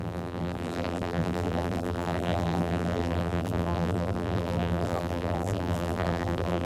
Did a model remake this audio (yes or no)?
yes